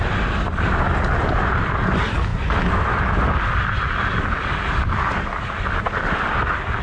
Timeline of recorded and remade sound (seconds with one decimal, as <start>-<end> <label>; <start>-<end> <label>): 0.0-2.3 recorded; 2.3-5.4 remade; 5.4-6.8 recorded

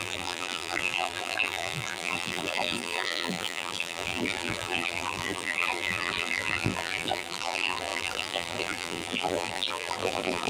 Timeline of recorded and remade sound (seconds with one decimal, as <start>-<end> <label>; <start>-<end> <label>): 0.0-10.5 remade

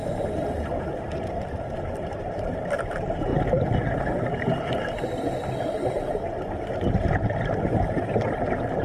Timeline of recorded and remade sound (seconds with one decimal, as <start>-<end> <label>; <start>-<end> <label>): 0.0-1.2 recorded; 1.2-3.3 remade; 3.3-7.8 recorded; 7.8-8.8 remade